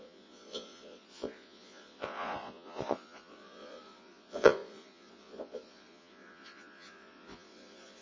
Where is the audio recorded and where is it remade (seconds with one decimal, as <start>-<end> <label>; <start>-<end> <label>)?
0.0-8.0 remade